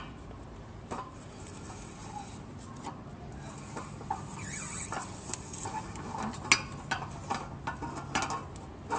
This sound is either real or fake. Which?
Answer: real